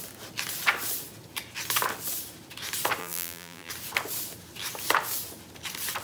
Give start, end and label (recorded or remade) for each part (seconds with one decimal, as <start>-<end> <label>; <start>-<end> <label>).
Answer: 0.0-3.0 recorded; 3.0-3.7 remade; 3.7-6.0 recorded

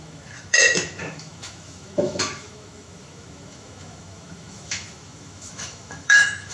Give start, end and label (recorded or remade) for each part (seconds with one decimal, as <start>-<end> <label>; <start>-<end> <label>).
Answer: 0.0-6.5 remade

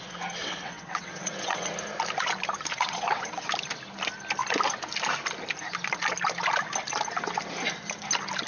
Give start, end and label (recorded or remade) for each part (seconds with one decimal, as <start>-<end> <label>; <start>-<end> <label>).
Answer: 0.0-0.4 recorded; 0.4-1.7 remade; 1.7-2.7 recorded; 2.7-3.5 remade; 3.5-8.5 recorded